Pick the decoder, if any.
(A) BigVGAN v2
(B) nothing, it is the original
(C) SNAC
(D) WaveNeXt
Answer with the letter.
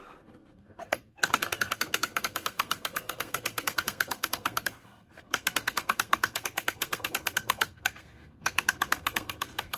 C